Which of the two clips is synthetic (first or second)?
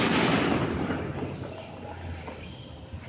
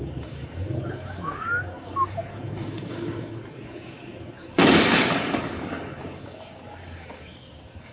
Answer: second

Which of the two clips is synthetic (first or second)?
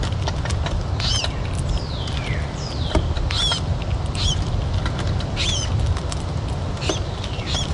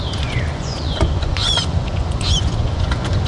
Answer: second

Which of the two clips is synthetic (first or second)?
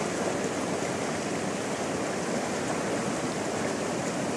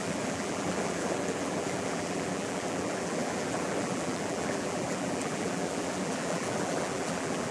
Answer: second